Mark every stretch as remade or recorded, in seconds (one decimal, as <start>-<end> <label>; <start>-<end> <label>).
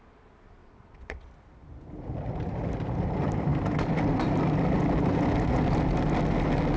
0.0-0.6 recorded; 0.6-1.3 remade; 1.3-6.8 recorded